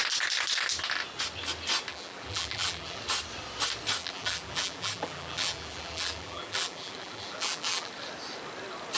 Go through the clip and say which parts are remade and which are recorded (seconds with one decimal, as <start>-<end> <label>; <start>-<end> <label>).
0.0-1.9 recorded; 1.9-3.0 remade; 3.0-4.0 recorded; 4.0-7.9 remade; 7.9-9.0 recorded